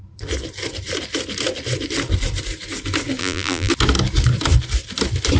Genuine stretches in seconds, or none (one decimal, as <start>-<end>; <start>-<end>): 0.0-3.2; 3.7-5.4